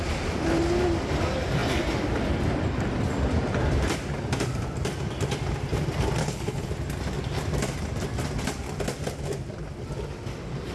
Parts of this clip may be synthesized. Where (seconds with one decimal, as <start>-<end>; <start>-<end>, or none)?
6.2-6.7